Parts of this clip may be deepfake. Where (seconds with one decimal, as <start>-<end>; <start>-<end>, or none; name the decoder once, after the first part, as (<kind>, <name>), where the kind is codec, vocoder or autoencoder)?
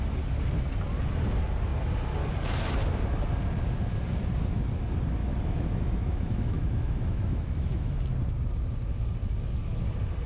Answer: 5.2-8.0 (autoencoder, DAC-VAE)